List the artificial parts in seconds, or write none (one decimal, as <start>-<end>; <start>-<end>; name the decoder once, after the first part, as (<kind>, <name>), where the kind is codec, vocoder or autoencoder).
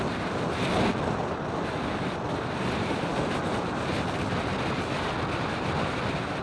none